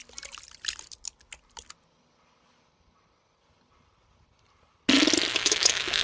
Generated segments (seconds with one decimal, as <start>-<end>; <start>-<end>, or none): 5.3-6.0